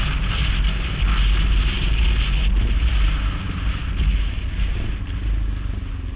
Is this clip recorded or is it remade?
recorded